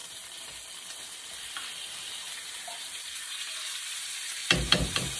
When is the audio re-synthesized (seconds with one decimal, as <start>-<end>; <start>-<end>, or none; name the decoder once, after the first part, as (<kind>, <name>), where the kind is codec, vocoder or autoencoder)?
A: 2.6-4.4 (vocoder, BigVGAN v2)